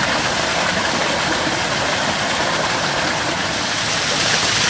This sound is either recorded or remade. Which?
recorded